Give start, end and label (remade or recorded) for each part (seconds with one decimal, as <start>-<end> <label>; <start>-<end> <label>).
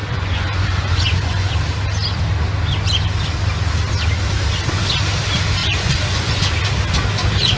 0.0-1.5 remade; 1.5-5.6 recorded; 5.6-6.5 remade; 6.5-7.6 recorded